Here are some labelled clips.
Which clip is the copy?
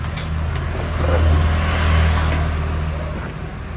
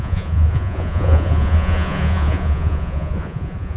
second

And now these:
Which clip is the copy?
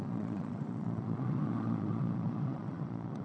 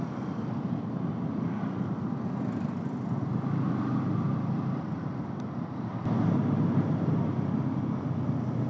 first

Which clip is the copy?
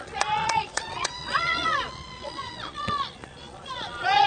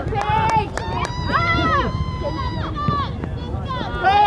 first